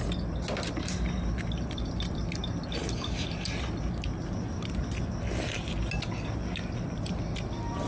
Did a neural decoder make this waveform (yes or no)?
no